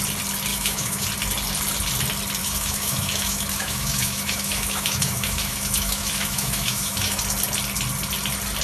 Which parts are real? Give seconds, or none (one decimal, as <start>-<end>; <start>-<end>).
0.0-0.5; 1.1-2.4; 7.2-8.6